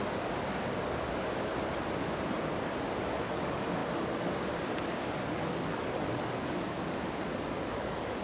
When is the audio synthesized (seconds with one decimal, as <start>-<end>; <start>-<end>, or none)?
0.0-1.5; 3.3-8.2